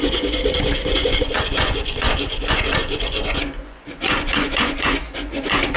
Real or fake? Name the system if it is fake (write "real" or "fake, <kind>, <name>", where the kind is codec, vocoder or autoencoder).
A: fake, vocoder, Vocos